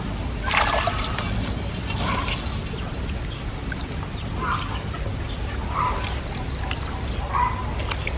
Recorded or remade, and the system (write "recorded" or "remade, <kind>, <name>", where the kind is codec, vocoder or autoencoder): recorded